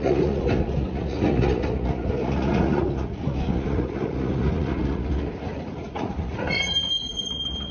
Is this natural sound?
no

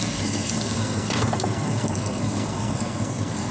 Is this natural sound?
no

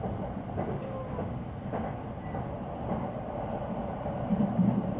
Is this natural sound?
yes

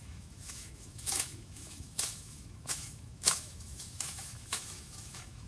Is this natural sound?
no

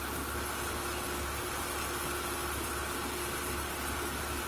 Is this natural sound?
yes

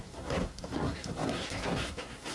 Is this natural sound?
no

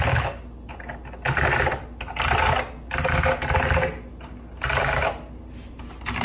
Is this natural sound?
yes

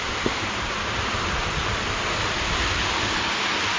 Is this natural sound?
yes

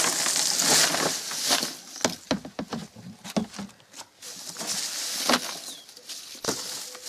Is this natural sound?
yes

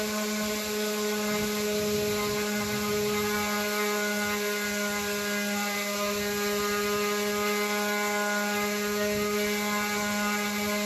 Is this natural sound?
yes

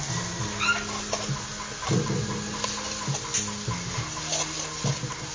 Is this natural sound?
yes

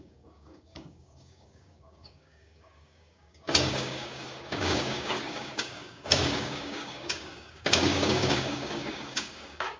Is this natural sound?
no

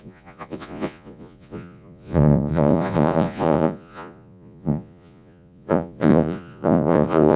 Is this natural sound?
no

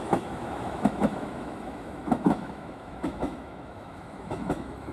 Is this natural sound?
no